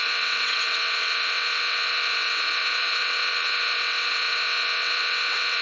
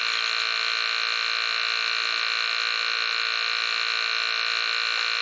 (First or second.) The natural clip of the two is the second